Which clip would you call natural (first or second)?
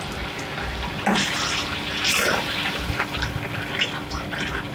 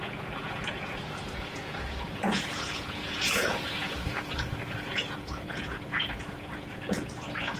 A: first